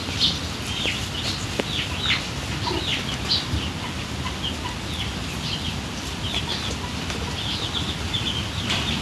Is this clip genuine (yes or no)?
yes